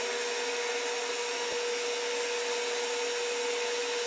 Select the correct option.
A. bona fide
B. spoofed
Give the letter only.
A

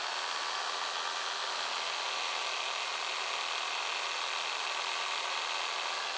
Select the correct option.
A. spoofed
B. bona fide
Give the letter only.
B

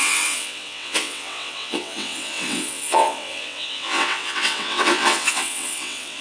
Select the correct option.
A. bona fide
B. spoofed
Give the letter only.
B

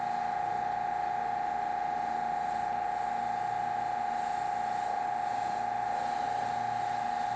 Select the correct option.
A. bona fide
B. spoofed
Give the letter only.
A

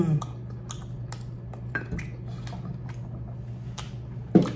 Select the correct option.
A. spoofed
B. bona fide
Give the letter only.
B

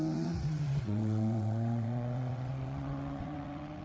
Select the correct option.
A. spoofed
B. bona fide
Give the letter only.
A